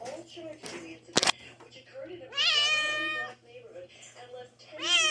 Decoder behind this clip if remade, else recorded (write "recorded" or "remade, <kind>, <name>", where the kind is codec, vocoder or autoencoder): recorded